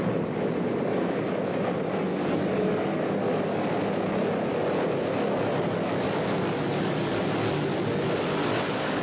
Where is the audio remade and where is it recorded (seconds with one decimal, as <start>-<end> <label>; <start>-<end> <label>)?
0.0-2.1 recorded; 2.1-3.0 remade; 3.0-6.7 recorded; 6.7-7.2 remade; 7.2-9.0 recorded